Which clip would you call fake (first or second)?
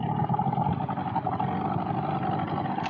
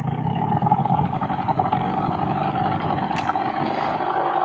second